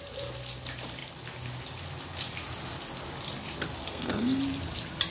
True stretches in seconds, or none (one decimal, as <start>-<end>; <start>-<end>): 0.0-3.9; 4.4-5.1